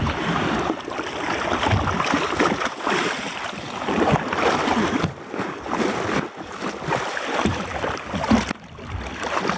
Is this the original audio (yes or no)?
yes